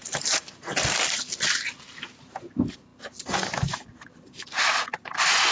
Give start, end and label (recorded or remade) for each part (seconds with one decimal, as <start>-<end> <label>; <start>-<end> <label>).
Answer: 0.0-1.2 remade; 1.2-5.5 recorded